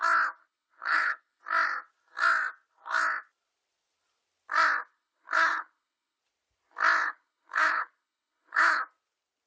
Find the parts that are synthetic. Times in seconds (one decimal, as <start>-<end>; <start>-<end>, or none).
0.4-1.4; 4.9-6.2; 7.0-8.8